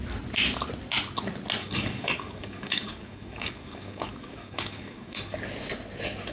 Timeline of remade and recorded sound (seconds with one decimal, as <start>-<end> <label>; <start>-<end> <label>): 0.0-1.6 recorded; 1.6-5.4 remade; 5.4-6.3 recorded